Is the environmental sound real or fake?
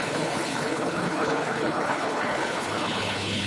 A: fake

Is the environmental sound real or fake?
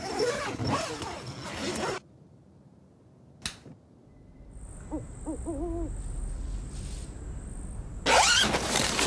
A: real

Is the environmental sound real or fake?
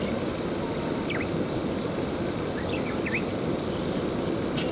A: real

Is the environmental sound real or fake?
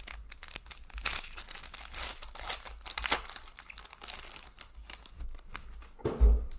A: real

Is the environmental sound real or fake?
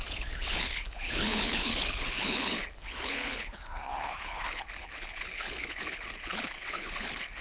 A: fake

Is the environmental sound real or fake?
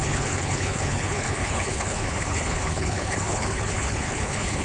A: fake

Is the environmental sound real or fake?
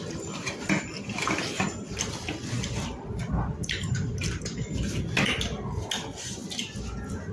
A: real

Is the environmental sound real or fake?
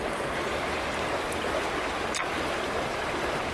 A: real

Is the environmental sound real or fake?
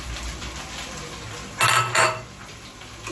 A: real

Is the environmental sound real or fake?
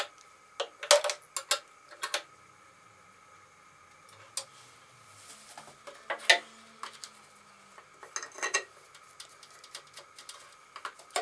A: real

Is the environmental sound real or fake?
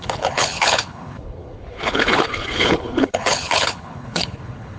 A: fake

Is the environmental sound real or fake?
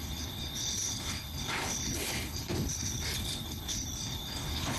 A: fake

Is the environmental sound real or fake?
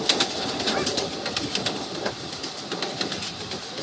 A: real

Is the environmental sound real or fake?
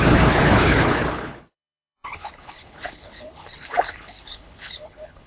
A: fake